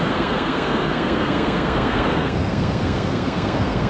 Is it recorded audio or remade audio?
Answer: remade